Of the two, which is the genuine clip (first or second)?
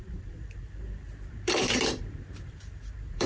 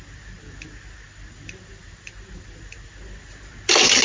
second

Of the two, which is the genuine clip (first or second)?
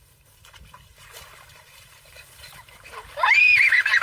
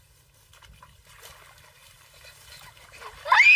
second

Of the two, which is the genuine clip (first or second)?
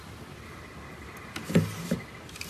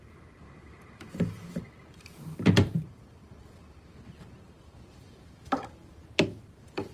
first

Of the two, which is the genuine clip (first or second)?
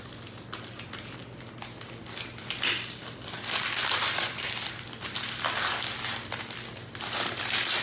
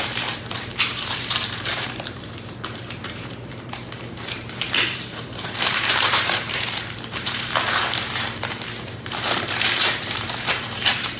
first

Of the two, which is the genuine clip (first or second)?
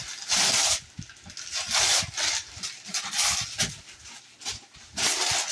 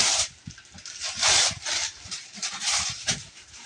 first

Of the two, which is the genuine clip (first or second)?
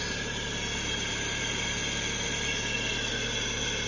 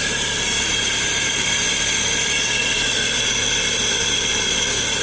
first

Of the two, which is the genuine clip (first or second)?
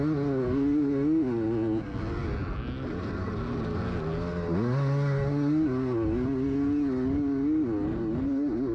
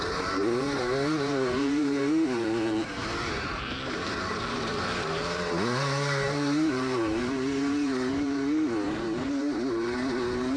first